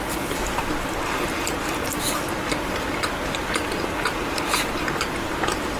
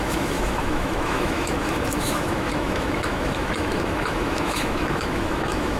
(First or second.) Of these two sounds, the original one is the first